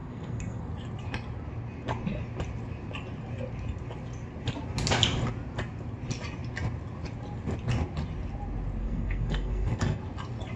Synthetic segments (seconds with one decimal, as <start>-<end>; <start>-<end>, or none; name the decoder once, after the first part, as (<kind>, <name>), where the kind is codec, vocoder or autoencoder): 0.0-0.7 (codec, SNAC); 8.8-10.0